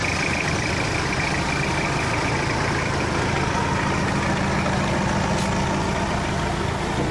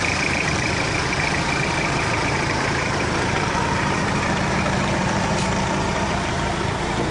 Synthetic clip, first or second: second